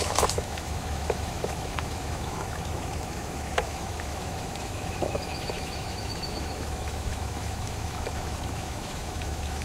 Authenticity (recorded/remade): remade